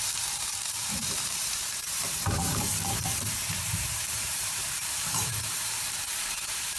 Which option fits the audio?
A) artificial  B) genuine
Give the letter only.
A